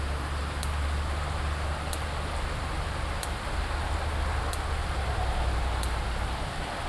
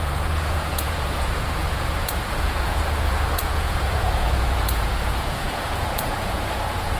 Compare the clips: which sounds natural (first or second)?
first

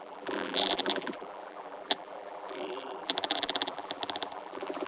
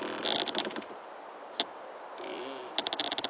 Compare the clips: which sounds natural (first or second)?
second